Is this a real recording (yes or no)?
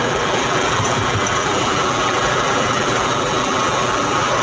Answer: no